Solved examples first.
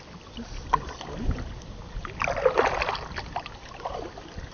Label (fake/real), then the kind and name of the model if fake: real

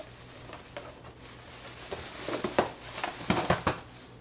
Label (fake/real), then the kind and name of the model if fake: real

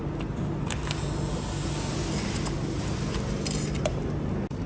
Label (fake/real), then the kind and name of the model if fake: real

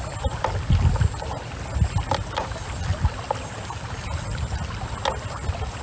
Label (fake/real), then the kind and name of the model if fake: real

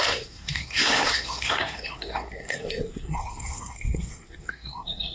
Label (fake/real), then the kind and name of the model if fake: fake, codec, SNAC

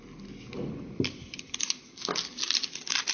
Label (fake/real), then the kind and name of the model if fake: real